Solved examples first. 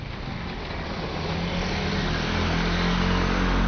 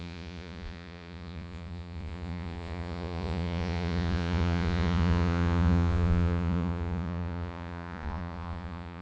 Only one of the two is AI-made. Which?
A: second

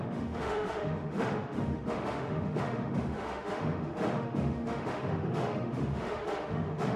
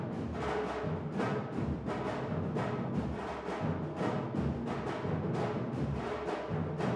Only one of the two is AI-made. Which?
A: first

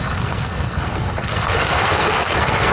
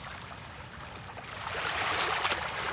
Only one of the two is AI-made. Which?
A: first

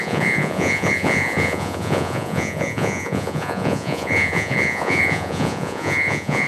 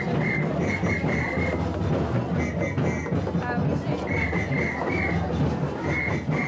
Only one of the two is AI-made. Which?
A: first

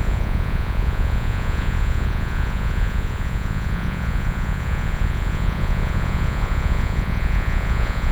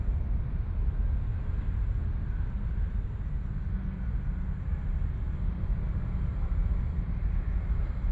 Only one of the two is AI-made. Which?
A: first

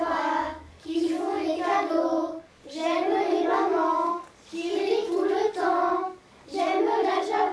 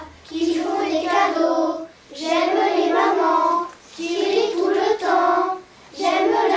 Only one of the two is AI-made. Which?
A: first